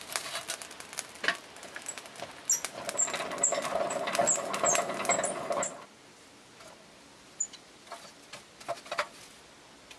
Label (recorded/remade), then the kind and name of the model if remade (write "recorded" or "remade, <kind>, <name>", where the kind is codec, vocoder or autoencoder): recorded